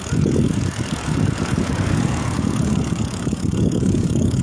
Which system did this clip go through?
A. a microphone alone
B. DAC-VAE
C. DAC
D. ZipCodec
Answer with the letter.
C